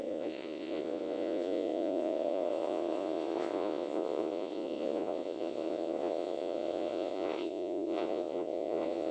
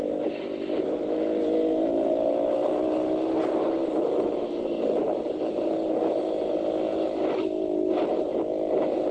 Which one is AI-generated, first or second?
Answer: first